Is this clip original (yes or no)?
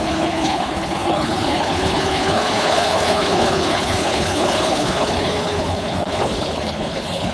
no